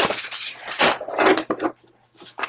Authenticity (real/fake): real